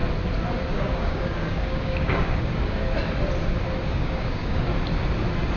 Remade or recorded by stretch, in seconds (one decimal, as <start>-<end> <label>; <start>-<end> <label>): 0.0-0.7 recorded; 0.7-2.8 remade; 2.8-3.8 recorded; 3.8-4.7 remade; 4.7-5.6 recorded